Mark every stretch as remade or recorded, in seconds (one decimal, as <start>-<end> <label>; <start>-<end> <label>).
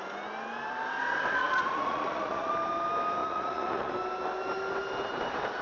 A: 0.0-1.4 recorded; 1.4-2.5 remade; 2.5-3.2 recorded; 3.2-3.9 remade; 3.9-5.6 recorded